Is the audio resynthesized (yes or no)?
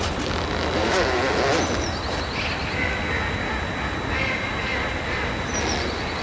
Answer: no